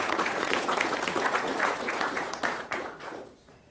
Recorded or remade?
remade